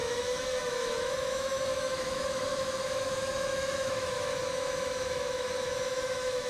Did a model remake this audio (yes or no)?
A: yes